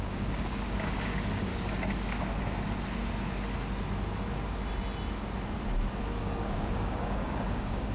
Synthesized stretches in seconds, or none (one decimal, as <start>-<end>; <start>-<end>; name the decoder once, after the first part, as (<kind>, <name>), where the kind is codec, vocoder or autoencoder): 0.0-1.5 (codec, DAC); 6.2-7.9